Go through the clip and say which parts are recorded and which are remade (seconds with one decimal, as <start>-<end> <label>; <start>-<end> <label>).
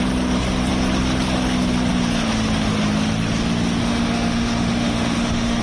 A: 0.0-3.8 recorded; 3.8-5.6 remade